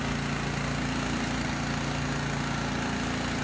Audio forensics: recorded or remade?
recorded